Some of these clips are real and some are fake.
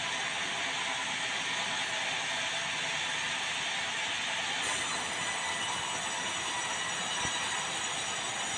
real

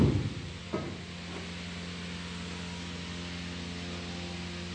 real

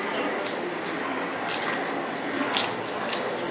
real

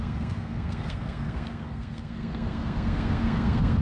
fake